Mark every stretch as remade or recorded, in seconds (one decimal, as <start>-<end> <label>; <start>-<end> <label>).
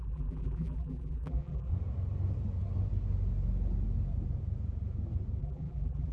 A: 0.0-1.7 remade; 1.7-5.4 recorded; 5.4-6.1 remade